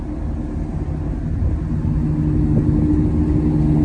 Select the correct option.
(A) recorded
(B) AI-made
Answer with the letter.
A